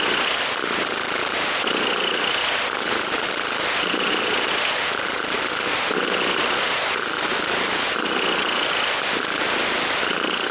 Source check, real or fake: real